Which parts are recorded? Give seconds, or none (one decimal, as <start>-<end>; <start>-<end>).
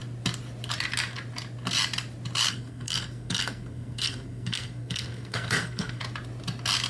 0.0-2.5; 6.0-6.9